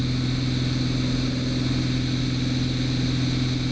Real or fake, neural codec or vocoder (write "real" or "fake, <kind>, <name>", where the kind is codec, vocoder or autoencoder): real